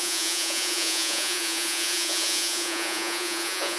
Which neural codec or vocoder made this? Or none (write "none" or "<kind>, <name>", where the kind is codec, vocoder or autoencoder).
vocoder, Vocos